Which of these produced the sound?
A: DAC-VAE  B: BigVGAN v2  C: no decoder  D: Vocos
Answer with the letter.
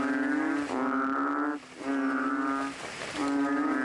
C